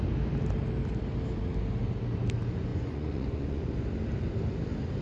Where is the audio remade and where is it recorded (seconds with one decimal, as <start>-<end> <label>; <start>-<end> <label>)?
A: 0.0-2.7 recorded; 2.7-3.6 remade; 3.6-5.0 recorded